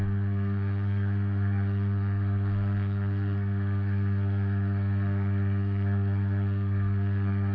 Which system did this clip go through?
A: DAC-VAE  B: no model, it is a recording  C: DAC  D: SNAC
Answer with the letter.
D